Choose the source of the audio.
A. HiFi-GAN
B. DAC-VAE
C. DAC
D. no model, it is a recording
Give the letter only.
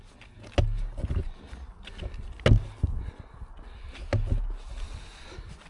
D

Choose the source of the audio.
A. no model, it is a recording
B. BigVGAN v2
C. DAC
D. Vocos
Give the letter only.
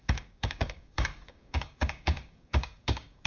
C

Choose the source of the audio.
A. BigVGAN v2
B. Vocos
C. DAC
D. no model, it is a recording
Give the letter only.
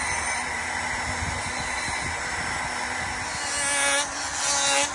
D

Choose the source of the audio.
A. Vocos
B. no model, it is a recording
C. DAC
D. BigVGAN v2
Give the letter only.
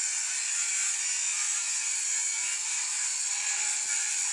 B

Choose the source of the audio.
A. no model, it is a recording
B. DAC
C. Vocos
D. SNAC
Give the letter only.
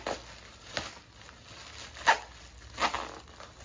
A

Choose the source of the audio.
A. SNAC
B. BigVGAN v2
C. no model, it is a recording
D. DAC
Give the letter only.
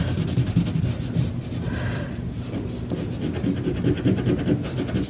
C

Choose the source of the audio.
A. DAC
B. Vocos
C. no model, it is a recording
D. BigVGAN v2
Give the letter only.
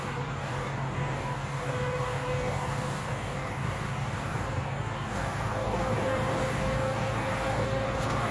A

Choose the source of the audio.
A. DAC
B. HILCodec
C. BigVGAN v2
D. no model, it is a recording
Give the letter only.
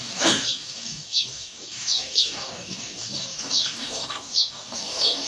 A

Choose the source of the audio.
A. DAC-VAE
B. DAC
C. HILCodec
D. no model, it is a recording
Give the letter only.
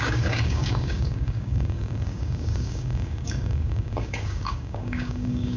B